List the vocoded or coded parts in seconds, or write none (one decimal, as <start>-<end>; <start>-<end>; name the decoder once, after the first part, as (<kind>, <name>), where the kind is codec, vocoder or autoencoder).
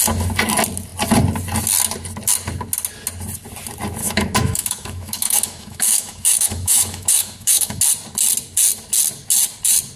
4.0-7.8 (autoencoder, DAC-VAE)